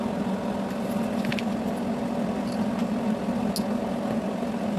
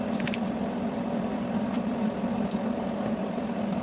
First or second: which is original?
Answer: first